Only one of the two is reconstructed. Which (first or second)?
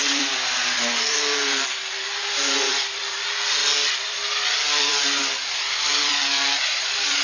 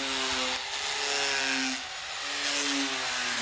first